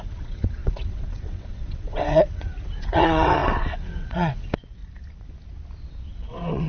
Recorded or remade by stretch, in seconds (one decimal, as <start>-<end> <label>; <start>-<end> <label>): 0.0-4.8 remade; 4.8-6.1 recorded; 6.1-6.7 remade